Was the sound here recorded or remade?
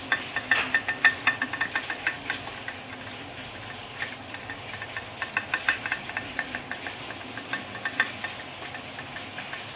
recorded